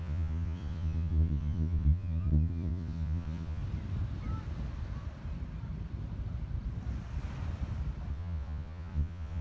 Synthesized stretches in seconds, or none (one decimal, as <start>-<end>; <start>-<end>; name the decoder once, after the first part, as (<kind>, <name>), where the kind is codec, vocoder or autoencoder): 0.0-3.6 (vocoder, Vocos); 8.1-9.4